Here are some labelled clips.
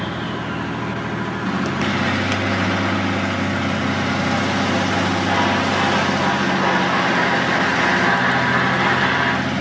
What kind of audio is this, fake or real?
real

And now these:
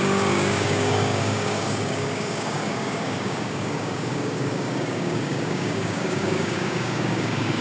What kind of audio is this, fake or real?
fake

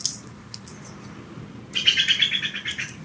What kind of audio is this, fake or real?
real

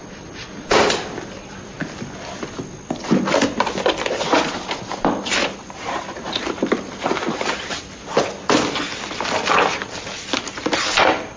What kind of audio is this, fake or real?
real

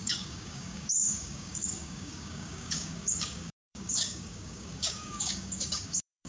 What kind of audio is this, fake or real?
fake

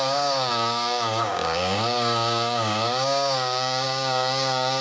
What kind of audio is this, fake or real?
fake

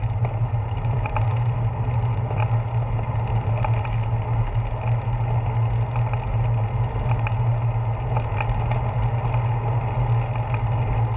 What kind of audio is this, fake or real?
real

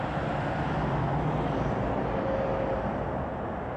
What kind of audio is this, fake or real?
real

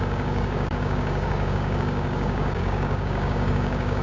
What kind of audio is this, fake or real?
fake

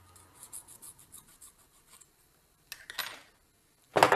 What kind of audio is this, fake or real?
real